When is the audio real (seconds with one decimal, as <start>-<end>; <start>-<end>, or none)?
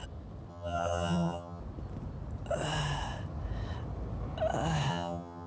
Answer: 0.0-0.5; 1.6-4.9